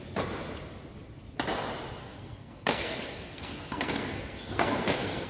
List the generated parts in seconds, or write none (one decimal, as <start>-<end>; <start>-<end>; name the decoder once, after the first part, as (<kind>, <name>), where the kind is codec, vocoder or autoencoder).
2.0-5.3 (codec, SNAC)